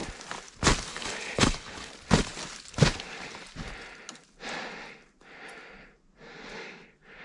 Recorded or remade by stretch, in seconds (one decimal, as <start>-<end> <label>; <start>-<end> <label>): 0.0-0.9 recorded; 0.9-1.9 remade; 1.9-7.2 recorded